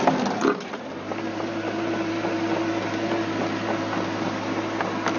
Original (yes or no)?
yes